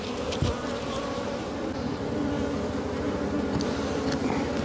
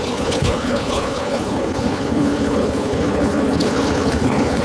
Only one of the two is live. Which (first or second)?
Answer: first